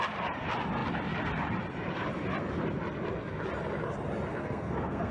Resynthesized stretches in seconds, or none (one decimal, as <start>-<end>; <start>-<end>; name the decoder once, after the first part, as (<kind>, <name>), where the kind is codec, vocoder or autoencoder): 4.3-5.1 (codec, SNAC)